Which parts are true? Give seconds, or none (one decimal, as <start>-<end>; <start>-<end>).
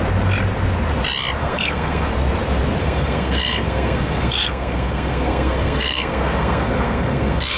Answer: 0.0-1.4; 2.1-2.8